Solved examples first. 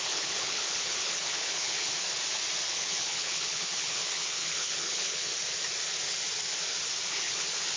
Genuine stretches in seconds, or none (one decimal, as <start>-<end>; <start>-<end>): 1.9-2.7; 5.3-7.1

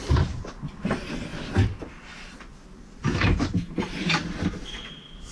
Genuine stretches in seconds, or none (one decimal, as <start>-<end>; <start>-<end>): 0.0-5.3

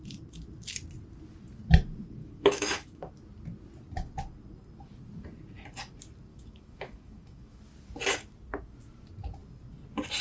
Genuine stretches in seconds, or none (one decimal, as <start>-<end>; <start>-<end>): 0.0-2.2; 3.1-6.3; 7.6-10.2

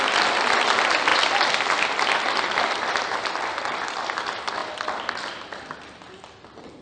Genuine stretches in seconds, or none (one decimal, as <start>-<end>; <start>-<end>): 0.0-6.8